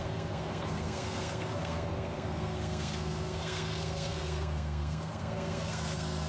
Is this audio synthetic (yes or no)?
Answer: yes